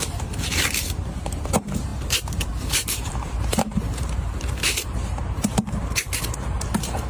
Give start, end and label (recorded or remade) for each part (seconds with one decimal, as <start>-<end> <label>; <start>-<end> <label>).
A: 0.0-7.1 remade